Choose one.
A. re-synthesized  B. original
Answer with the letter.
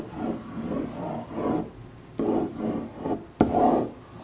B